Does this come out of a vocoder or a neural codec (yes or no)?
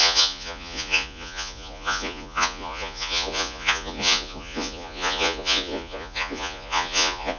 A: yes